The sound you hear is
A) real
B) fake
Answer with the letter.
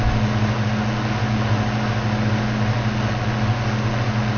A